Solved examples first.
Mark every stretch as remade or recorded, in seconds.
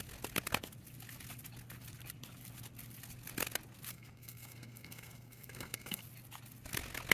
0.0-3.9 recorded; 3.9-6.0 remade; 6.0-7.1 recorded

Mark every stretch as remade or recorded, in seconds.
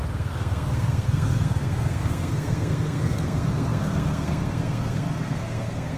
0.0-6.0 remade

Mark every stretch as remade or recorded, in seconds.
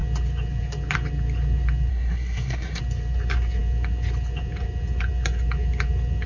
0.0-1.9 recorded; 1.9-2.8 remade; 2.8-6.3 recorded